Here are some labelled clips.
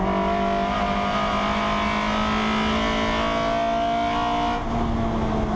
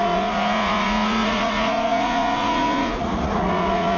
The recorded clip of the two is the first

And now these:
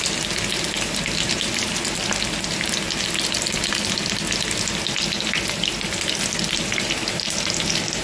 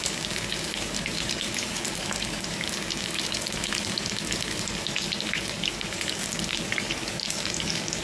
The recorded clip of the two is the first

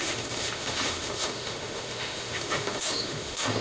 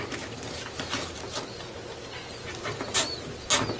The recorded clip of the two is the second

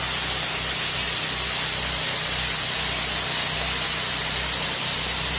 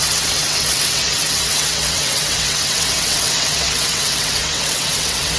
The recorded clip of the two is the first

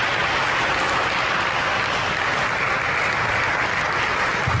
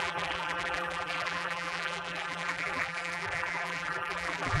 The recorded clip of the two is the first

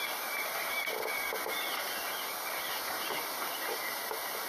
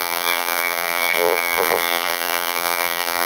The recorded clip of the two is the first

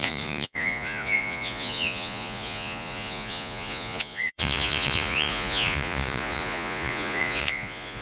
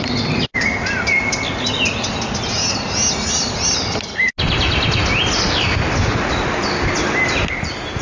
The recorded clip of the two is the second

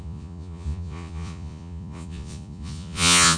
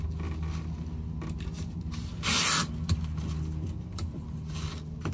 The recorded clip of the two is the second